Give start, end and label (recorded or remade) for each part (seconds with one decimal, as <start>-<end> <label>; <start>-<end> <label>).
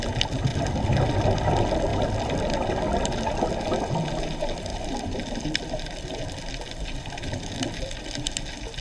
0.0-0.5 recorded; 0.5-1.0 remade; 1.0-1.9 recorded; 1.9-2.4 remade; 2.4-4.7 recorded; 4.7-6.5 remade; 6.5-8.8 recorded